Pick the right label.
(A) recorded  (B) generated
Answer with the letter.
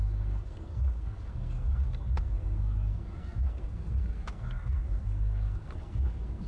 B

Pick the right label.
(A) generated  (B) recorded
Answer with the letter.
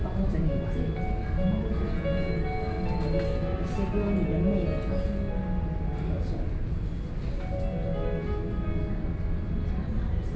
B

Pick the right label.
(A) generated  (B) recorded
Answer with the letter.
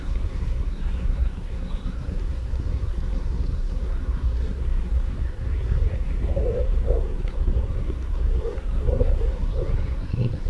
A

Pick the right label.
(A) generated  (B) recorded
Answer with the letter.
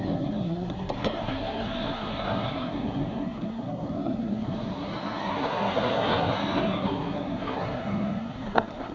A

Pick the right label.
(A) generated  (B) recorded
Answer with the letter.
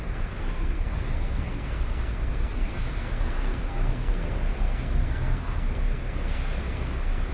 A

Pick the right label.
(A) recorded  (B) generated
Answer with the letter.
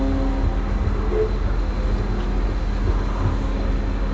A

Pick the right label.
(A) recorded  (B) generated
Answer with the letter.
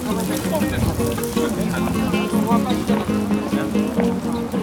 A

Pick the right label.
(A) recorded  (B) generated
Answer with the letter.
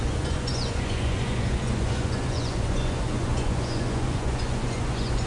B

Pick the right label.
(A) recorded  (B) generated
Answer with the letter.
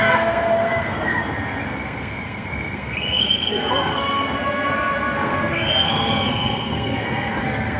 B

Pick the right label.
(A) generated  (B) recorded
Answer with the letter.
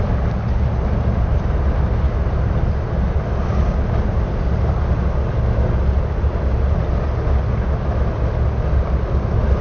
B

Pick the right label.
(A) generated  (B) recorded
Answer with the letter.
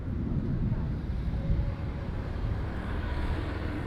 A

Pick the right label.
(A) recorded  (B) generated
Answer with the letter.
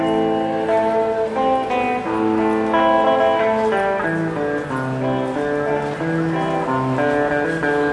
A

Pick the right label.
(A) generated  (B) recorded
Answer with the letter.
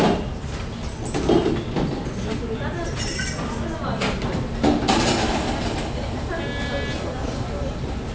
B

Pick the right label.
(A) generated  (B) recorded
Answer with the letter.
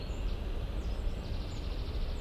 B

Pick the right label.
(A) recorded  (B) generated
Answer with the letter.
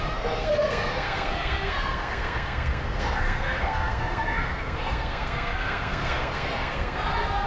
B